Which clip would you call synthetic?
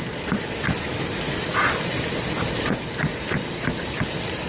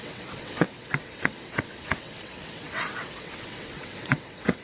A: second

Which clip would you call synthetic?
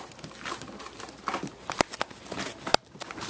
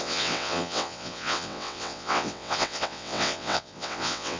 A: second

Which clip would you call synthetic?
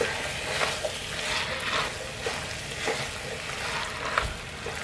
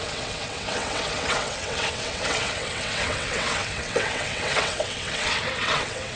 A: second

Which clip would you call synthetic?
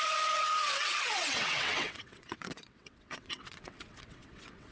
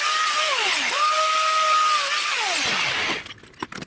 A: first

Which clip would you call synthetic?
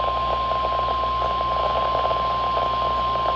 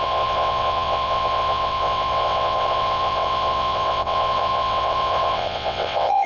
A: second